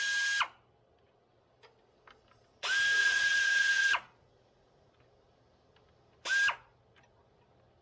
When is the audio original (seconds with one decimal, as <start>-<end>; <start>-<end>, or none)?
0.0-3.0; 4.9-7.8